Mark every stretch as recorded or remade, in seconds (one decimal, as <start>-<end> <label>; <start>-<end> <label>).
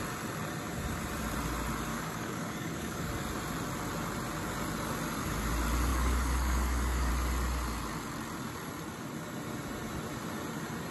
0.0-1.9 recorded; 1.9-3.1 remade; 3.1-5.9 recorded; 5.9-7.1 remade; 7.1-10.9 recorded